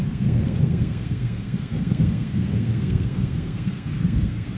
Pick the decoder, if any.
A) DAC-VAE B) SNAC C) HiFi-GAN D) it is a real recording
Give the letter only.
B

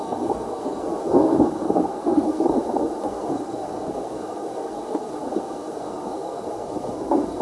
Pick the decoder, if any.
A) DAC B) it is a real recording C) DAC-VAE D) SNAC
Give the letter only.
D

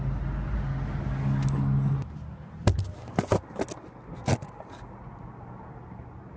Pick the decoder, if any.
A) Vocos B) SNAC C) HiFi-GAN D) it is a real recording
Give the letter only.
D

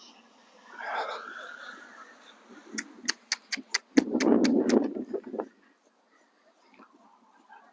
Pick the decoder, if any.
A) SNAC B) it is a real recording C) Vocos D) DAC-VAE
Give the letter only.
B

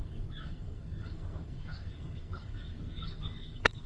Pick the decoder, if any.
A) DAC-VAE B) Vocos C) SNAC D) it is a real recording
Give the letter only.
C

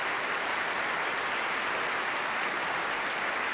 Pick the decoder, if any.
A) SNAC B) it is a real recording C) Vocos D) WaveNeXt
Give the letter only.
B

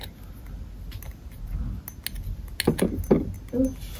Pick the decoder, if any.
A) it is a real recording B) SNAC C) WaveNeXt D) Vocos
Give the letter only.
A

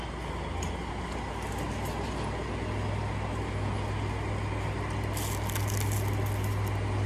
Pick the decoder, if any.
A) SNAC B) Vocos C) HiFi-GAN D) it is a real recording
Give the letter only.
D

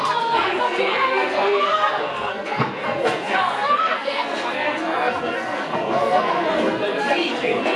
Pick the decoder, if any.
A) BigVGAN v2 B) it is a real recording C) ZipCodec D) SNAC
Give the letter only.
D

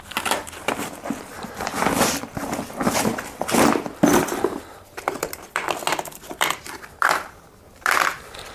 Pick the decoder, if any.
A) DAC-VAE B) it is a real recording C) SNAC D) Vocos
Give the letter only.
B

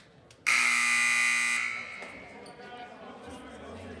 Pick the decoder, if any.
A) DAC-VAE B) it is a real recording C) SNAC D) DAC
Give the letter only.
B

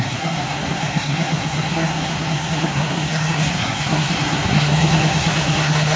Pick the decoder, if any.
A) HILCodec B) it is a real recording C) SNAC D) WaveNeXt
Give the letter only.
C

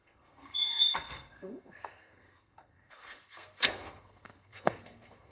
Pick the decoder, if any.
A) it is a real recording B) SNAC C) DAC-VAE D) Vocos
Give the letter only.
B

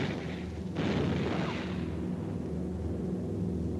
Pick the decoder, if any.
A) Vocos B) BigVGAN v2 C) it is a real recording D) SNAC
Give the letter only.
C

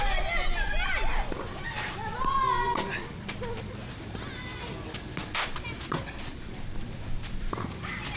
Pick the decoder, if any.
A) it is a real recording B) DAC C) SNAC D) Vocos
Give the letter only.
A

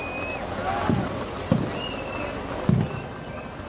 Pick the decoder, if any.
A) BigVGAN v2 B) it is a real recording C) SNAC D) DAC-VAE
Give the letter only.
B